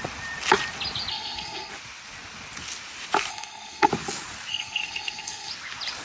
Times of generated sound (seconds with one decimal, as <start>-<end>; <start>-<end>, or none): 1.1-1.7; 3.3-3.9; 4.5-5.5